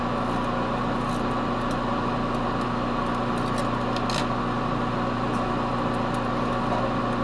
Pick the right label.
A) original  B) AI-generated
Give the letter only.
A